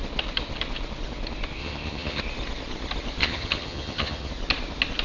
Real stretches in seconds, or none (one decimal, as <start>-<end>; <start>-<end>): 0.0-1.6; 2.2-3.2; 4.3-5.0